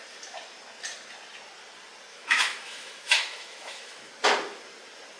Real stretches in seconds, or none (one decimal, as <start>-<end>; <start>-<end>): 0.0-2.1; 4.1-5.2